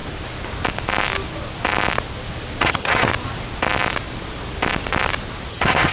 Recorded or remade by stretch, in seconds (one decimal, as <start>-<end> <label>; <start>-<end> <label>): 0.0-2.6 recorded; 2.6-3.1 remade; 3.1-5.5 recorded; 5.5-5.9 remade